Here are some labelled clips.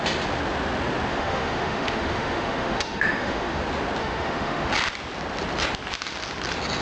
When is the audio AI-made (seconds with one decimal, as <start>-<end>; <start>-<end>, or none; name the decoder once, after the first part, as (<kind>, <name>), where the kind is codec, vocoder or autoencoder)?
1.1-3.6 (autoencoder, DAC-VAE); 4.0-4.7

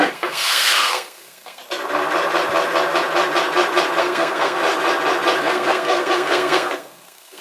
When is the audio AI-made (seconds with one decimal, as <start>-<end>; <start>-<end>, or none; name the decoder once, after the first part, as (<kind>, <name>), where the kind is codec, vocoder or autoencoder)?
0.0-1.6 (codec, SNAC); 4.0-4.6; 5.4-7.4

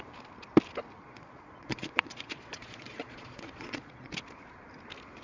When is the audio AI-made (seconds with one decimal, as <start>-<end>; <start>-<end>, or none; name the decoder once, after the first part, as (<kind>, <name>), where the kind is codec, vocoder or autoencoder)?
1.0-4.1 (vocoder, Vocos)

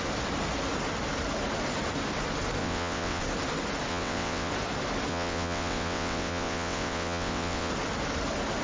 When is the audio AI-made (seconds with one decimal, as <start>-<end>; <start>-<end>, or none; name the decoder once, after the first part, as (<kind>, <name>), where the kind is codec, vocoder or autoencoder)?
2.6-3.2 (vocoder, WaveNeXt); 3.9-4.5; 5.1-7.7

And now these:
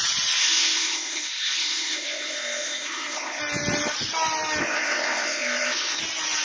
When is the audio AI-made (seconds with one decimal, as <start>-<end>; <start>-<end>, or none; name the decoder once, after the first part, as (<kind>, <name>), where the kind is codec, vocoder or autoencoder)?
0.4-3.4 (codec, ZipCodec); 4.6-6.0